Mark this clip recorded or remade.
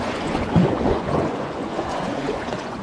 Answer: remade